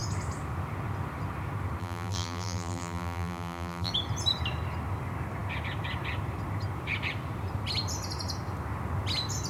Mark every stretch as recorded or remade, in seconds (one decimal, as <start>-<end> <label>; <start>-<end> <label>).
0.0-1.8 recorded; 1.8-3.9 remade; 3.9-9.5 recorded